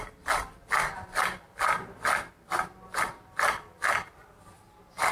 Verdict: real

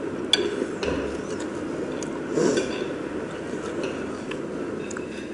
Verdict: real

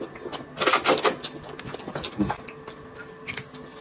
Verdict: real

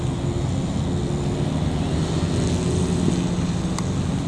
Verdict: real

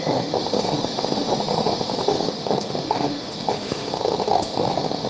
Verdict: fake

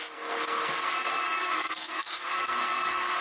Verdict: fake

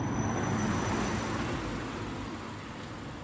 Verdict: real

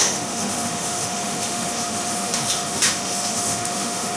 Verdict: fake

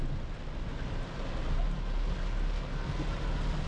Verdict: real